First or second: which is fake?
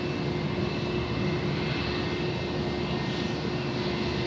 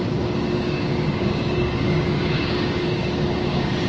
second